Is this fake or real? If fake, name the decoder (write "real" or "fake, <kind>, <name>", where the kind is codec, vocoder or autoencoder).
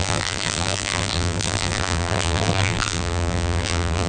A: fake, vocoder, BigVGAN v2